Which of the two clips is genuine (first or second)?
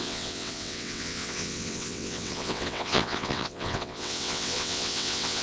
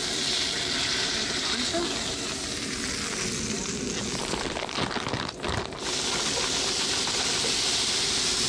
second